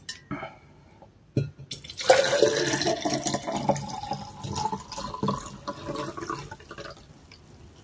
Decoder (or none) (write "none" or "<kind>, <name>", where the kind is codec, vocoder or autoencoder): none